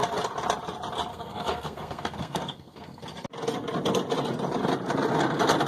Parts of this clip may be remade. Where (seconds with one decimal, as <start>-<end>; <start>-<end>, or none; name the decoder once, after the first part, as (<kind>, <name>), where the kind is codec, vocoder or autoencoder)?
1.1-3.0 (codec, SNAC)